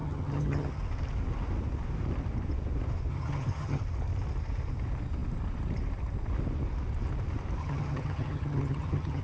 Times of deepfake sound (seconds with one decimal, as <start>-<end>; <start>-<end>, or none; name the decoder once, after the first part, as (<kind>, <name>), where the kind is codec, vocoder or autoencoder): 0.0-0.8 (vocoder, HiFi-GAN); 3.1-3.8; 7.6-9.2